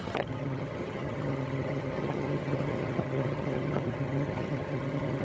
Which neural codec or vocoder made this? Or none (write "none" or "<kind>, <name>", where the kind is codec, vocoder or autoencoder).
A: vocoder, HiFi-GAN